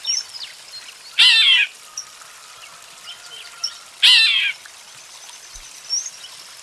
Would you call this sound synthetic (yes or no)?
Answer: no